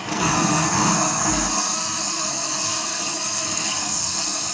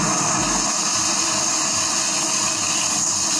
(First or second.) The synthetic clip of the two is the first